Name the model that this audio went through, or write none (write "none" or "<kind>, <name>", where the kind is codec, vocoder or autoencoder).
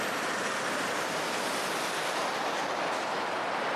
none